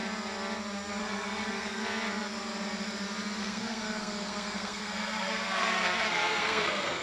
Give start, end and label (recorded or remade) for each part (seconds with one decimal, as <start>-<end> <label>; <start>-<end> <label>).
0.0-1.0 recorded; 1.0-1.8 remade; 1.8-3.4 recorded; 3.4-7.0 remade